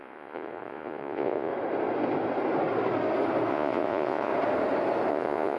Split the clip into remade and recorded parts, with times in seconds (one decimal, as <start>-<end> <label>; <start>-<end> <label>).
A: 0.0-1.5 remade; 1.5-3.5 recorded; 3.5-4.3 remade; 4.3-5.1 recorded; 5.1-5.6 remade